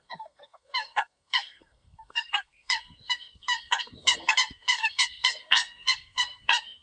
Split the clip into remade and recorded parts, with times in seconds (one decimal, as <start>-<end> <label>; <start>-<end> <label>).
0.0-6.8 remade

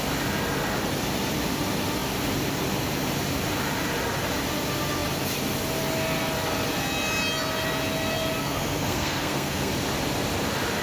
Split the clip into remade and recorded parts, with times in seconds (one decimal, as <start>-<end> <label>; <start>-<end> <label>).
0.0-8.4 recorded; 8.4-9.7 remade; 9.7-10.8 recorded

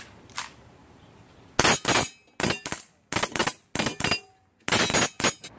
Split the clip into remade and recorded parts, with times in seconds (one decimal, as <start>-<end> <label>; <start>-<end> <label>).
0.0-5.6 recorded

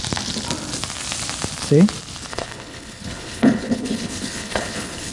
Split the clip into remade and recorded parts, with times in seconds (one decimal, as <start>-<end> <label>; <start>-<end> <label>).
0.0-2.3 recorded; 2.3-5.1 remade

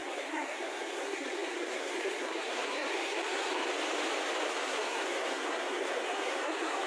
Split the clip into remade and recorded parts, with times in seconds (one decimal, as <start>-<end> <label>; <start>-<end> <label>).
0.0-3.7 remade; 3.7-4.5 recorded; 4.5-6.9 remade

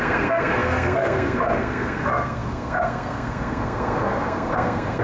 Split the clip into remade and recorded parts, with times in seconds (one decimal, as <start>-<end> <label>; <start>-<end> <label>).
0.0-5.0 remade